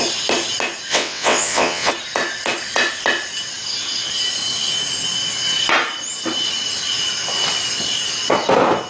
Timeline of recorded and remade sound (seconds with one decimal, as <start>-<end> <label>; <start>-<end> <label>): 0.0-0.9 recorded; 0.9-1.9 remade; 1.9-8.9 recorded